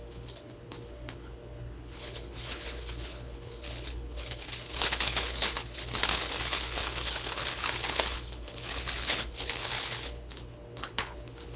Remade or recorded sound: remade